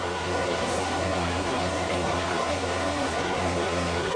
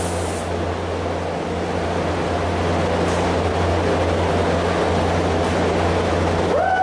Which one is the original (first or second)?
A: second